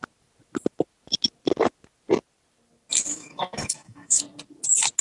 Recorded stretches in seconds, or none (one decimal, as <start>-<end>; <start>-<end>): 0.0-3.1; 4.2-5.0